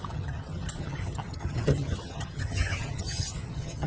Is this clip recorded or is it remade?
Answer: remade